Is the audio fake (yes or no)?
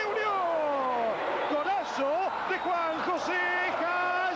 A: no